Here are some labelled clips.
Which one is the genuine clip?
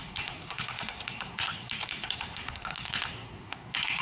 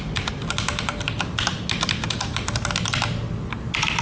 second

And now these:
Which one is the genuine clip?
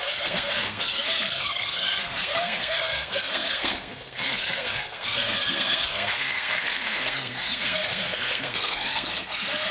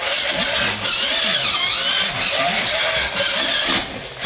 second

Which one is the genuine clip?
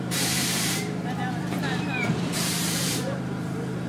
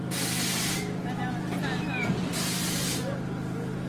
second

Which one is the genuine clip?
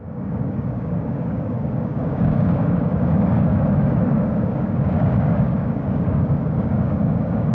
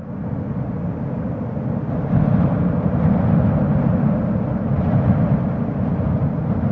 second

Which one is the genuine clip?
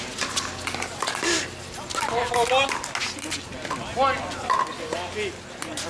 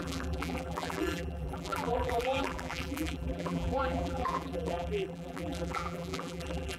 first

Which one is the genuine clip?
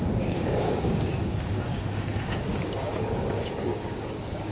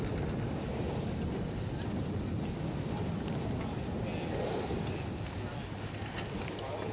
second